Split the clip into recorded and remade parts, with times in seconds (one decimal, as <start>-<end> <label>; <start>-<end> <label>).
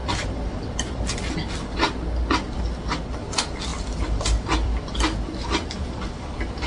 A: 0.0-1.3 remade; 1.3-3.7 recorded; 3.7-5.0 remade; 5.0-6.7 recorded